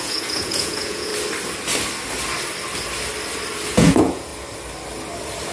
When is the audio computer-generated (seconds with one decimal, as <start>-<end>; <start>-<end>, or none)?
0.0-1.1; 3.7-4.3